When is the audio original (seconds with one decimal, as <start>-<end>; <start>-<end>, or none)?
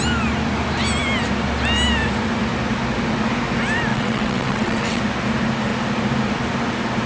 0.0-3.9; 5.0-7.1